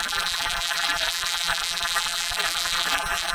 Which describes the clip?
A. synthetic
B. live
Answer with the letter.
A